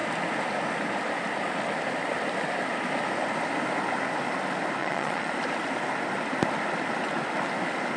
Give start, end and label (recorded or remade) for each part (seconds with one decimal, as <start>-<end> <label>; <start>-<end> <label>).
0.0-4.8 recorded; 4.8-5.3 remade; 5.3-8.0 recorded